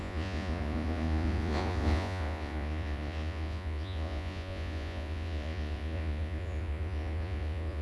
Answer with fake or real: fake